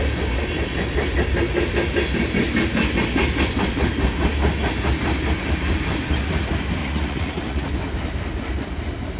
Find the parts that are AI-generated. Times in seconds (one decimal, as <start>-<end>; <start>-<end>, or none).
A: 6.8-7.7